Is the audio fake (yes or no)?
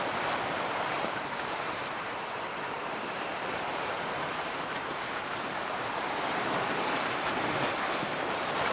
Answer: yes